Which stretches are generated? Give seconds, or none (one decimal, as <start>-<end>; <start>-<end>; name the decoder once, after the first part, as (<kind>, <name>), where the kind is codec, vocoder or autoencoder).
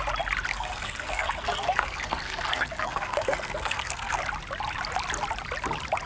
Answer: 0.5-4.2 (codec, SNAC)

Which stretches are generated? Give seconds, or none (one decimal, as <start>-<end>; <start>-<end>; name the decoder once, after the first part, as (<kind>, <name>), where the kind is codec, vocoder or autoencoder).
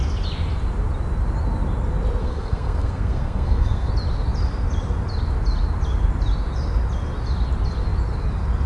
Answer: 2.2-3.9 (codec, SNAC)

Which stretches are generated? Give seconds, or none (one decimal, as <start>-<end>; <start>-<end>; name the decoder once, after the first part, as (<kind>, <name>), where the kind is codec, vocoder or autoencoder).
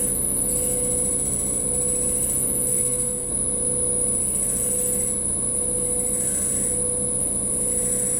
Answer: 2.7-3.3 (codec, SNAC)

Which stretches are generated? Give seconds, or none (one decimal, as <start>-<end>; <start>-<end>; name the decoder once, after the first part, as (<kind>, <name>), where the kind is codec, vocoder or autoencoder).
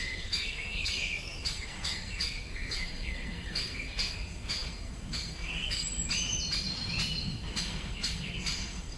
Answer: 0.0-5.9 (codec, SNAC); 7.2-9.0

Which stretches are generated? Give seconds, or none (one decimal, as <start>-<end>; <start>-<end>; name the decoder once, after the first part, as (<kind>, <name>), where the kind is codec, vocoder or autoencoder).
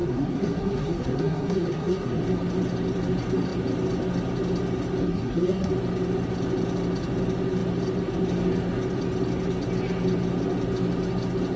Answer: 0.0-2.2 (codec, SNAC); 5.0-5.7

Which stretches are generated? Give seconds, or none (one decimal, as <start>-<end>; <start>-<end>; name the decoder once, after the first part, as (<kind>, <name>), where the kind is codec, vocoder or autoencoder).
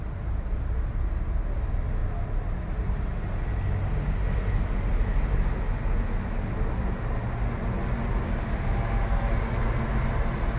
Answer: none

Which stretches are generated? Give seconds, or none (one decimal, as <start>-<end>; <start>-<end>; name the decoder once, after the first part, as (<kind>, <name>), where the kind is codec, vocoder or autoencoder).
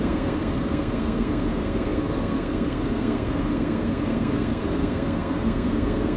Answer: 0.0-6.2 (codec, SNAC)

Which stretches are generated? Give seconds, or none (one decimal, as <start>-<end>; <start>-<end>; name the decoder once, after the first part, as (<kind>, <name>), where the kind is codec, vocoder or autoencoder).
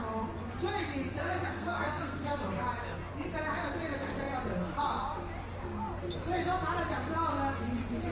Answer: 1.2-2.4 (codec, SNAC)